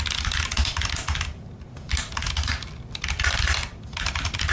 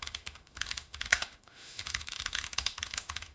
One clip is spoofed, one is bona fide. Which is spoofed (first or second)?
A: second